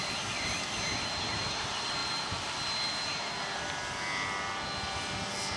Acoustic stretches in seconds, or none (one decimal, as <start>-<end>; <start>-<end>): 0.0-5.6